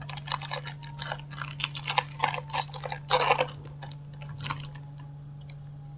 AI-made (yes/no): no